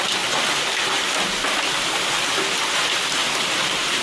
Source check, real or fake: real